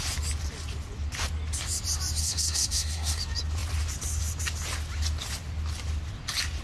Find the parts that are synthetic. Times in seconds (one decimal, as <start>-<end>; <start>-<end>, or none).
2.2-3.2